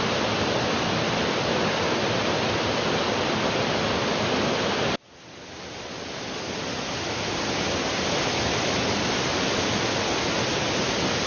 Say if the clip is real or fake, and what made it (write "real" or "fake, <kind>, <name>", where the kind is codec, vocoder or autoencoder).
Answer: real